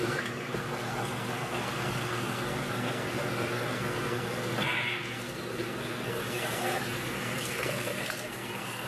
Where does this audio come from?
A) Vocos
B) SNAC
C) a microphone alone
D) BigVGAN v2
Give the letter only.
B